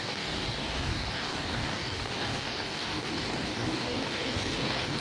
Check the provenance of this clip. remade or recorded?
remade